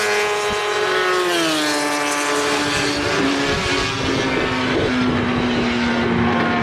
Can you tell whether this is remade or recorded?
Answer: recorded